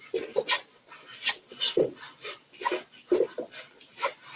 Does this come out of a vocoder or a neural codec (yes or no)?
no